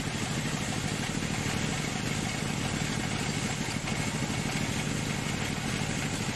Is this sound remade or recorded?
recorded